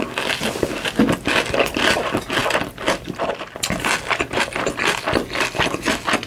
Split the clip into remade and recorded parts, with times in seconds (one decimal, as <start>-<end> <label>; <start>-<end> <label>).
0.0-6.3 recorded